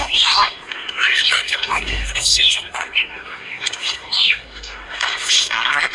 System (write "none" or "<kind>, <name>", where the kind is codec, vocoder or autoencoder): codec, SNAC